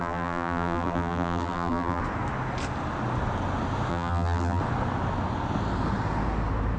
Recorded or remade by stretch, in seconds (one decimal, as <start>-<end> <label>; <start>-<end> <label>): 0.0-2.0 remade; 2.0-3.9 recorded; 3.9-4.6 remade; 4.6-6.8 recorded

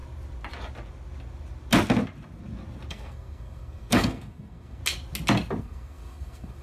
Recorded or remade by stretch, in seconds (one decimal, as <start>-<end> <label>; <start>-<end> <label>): 0.0-2.9 recorded; 2.9-4.8 remade; 4.8-5.6 recorded; 5.6-6.6 remade

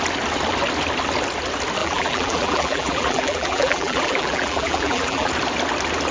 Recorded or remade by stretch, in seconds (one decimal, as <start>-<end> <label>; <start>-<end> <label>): 0.0-1.8 recorded; 1.8-5.3 remade; 5.3-6.1 recorded

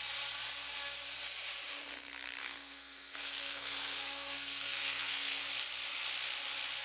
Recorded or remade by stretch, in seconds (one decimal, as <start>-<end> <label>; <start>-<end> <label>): 0.0-2.4 recorded; 2.4-5.4 remade; 5.4-6.8 recorded

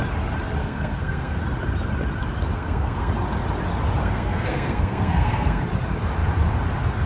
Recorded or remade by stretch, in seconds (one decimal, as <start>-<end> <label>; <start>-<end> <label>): 0.0-0.6 recorded; 0.6-1.4 remade; 1.4-2.5 recorded; 2.5-3.1 remade; 3.1-4.0 recorded; 4.0-5.6 remade; 5.6-7.1 recorded

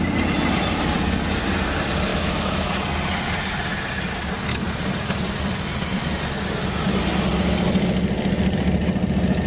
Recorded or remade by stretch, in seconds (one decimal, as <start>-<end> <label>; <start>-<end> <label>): 0.0-2.1 recorded; 2.1-2.7 remade; 2.7-9.5 recorded